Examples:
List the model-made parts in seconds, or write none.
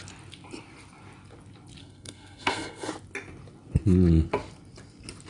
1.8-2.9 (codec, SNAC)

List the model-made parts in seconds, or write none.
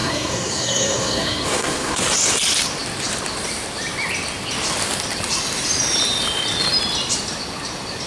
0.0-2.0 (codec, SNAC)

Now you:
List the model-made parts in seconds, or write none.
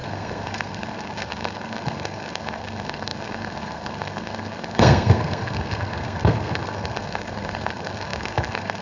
0.0-8.8 (codec, SNAC)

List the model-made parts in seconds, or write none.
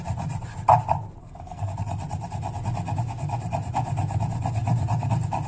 1.2-1.7 (codec, SNAC)